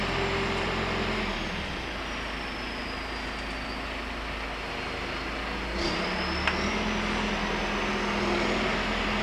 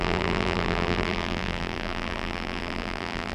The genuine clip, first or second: first